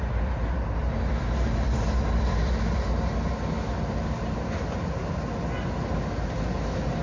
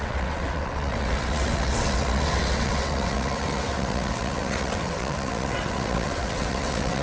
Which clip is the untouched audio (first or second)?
first